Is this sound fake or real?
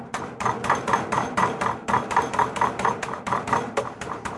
fake